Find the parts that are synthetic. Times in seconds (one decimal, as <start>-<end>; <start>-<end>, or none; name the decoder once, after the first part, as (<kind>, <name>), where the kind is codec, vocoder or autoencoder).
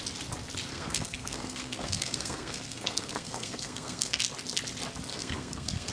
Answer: 0.7-4.2 (codec, SNAC); 5.1-5.9